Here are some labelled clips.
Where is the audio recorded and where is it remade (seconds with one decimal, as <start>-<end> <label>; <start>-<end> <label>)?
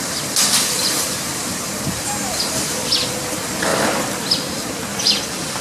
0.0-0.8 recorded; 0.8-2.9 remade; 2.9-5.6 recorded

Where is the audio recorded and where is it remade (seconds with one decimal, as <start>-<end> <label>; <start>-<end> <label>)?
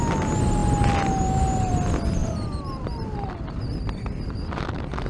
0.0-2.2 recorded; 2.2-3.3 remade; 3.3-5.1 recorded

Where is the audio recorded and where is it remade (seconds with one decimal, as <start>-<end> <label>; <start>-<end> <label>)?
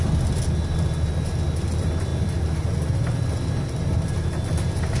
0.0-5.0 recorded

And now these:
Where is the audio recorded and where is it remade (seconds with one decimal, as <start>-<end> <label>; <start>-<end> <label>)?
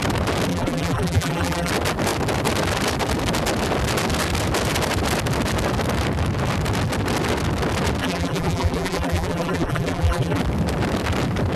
0.0-0.5 recorded; 0.5-1.7 remade; 1.7-8.0 recorded; 8.0-10.4 remade; 10.4-11.6 recorded